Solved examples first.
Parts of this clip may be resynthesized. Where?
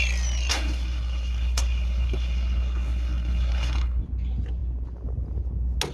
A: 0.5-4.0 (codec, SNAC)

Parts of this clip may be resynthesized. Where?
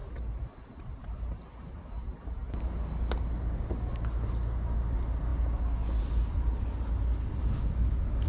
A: none